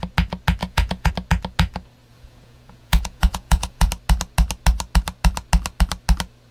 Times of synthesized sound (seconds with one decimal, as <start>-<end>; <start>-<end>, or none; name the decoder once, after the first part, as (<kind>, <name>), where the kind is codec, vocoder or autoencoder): 0.6-1.1 (vocoder, Vocos); 2.1-3.9